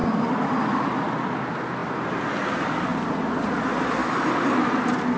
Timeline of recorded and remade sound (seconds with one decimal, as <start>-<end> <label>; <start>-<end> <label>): 0.0-4.0 recorded; 4.0-4.6 remade; 4.6-5.2 recorded